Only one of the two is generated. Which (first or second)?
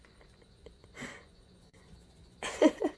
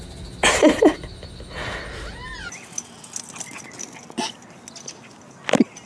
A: first